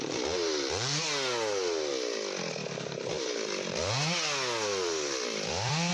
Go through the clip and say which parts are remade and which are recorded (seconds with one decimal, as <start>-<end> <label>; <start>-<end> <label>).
0.0-4.7 recorded; 4.7-5.9 remade